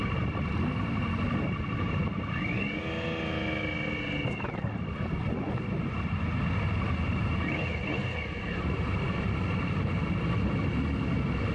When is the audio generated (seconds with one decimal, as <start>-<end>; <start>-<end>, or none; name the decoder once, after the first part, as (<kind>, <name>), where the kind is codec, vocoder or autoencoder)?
7.2-7.8 (vocoder, BigVGAN v2)

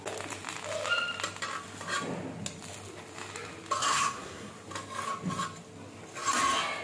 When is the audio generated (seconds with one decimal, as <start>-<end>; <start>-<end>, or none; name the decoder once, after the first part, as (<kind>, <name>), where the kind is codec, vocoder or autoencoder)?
3.8-4.5 (codec, SNAC)